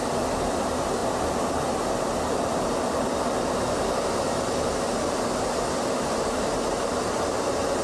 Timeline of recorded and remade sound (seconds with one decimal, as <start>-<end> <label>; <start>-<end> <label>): 0.0-6.0 recorded; 6.0-6.9 remade; 6.9-7.8 recorded